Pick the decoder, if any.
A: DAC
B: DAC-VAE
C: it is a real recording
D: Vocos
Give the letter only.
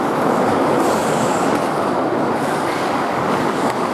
A